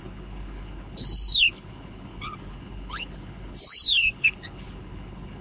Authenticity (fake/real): fake